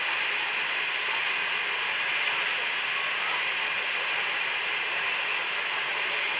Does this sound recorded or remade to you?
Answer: recorded